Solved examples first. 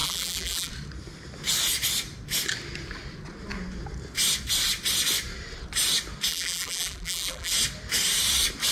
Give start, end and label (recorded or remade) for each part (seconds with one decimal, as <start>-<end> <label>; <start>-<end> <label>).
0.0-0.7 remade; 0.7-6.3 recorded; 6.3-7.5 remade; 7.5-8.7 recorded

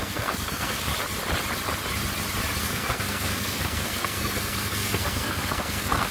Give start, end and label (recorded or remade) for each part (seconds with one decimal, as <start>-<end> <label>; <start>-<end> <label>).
0.0-0.9 remade; 0.9-2.6 recorded; 2.6-6.1 remade

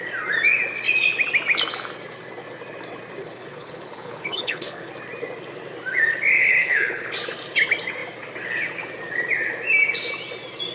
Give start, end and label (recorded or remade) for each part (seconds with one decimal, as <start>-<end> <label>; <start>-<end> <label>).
0.0-3.2 recorded; 3.2-4.9 remade; 4.9-6.4 recorded; 6.4-7.1 remade; 7.1-10.7 recorded